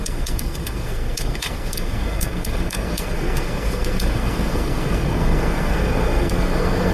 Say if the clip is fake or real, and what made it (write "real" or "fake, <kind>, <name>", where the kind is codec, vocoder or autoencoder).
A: fake, codec, SNAC